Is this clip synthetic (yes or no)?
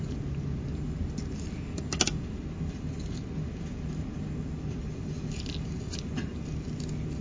no